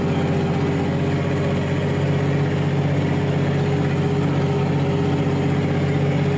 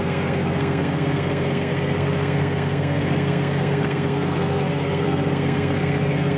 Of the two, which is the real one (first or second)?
first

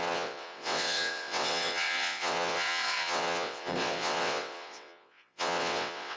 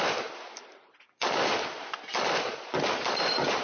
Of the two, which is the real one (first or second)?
second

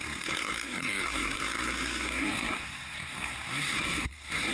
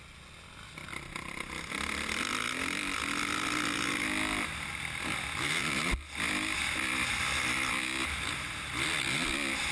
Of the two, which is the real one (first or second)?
second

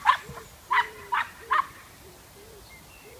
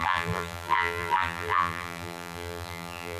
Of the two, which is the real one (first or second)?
first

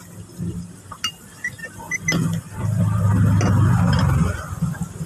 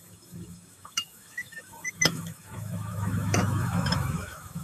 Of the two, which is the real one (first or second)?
first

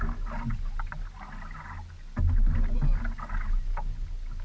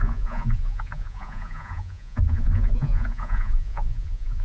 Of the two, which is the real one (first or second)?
first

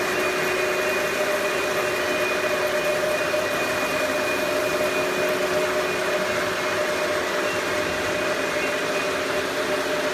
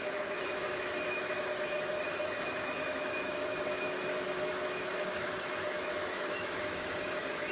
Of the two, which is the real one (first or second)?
first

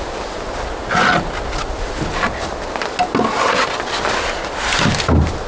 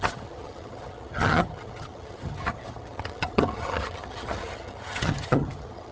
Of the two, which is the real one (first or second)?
first